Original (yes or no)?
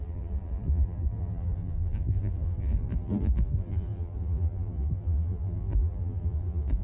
no